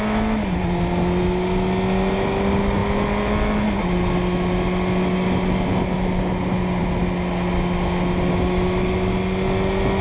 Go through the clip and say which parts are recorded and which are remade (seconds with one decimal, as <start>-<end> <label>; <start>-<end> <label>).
0.0-10.0 recorded